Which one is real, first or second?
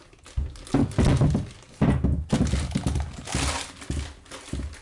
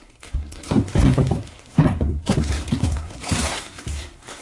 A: first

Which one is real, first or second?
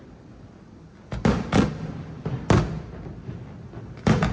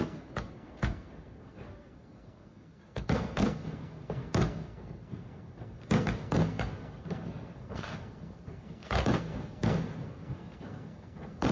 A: first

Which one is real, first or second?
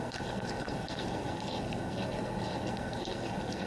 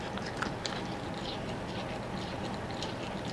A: second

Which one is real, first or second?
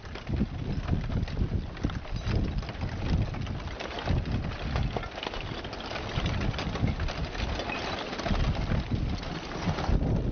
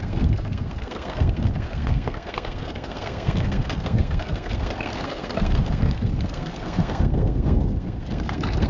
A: first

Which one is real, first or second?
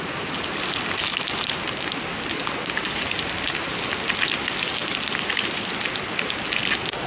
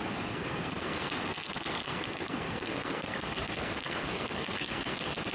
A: first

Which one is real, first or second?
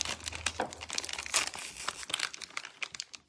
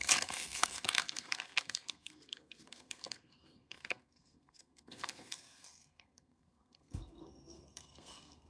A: first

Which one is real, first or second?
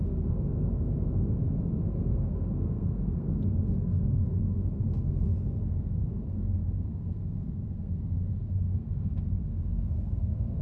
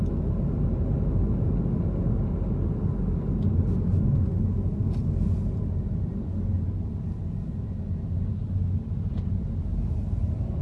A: second